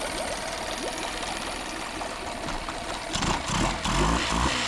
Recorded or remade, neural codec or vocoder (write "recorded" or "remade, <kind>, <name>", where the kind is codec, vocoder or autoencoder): recorded